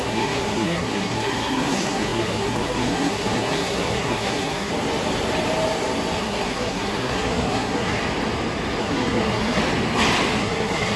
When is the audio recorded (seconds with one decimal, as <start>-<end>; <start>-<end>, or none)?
4.7-6.2; 8.0-8.8; 9.6-10.4

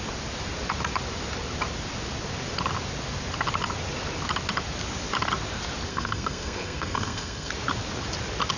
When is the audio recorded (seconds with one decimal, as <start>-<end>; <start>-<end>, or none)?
0.0-5.9; 7.5-8.6

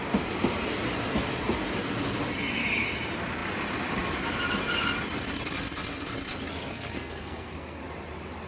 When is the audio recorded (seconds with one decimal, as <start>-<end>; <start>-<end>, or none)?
0.0-6.5; 7.8-8.5

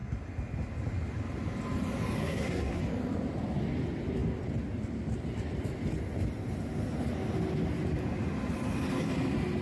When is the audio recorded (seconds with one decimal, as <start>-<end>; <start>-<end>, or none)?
0.0-2.2; 2.8-9.6

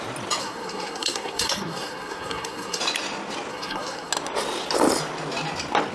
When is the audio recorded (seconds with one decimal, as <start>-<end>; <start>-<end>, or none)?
0.0-0.4; 2.8-3.5; 4.1-5.9

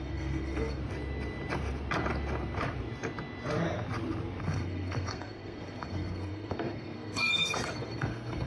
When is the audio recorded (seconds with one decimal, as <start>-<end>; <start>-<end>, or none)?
0.8-4.4

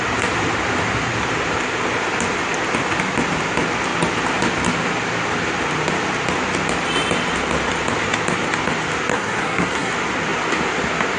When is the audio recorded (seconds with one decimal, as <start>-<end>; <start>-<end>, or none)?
0.0-9.1; 9.9-11.2